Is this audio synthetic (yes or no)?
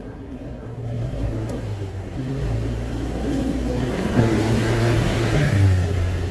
yes